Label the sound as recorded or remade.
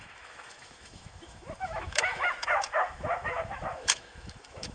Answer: remade